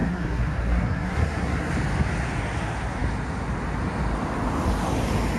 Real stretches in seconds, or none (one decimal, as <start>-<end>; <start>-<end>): 1.7-5.4